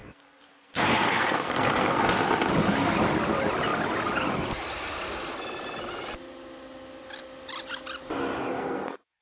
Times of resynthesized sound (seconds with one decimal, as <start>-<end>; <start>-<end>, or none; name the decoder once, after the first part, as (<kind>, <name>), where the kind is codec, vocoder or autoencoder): 0.0-2.0 (codec, SNAC); 8.5-9.2